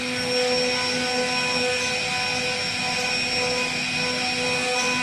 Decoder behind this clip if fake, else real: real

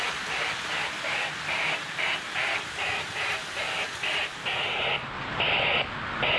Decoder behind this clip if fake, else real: real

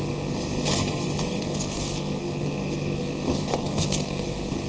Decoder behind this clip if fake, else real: fake, codec, SNAC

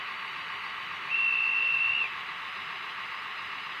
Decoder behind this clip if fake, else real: real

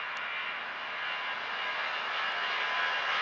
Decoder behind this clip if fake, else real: real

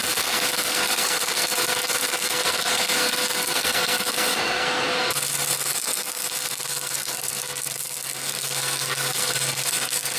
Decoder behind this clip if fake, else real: fake, codec, SNAC